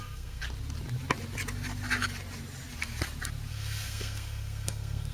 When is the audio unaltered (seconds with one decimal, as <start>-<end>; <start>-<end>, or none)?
0.4-3.5

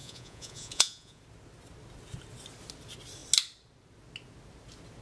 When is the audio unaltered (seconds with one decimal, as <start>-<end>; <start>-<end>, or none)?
1.2-5.0

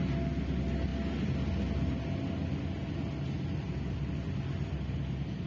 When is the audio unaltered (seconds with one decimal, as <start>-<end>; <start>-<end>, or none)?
0.0-5.5

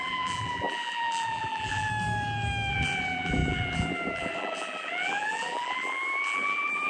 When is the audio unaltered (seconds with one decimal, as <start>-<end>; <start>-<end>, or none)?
1.9-2.7

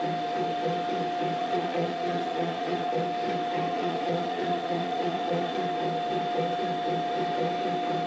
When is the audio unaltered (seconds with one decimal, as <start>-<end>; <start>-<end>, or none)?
0.0-1.4; 2.9-3.7; 5.6-8.1